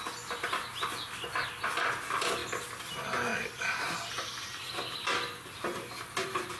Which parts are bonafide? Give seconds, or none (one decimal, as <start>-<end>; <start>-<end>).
0.0-6.6